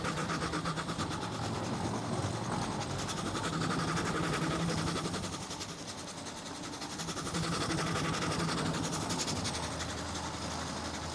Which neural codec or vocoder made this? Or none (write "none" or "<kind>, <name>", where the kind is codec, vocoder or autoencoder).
none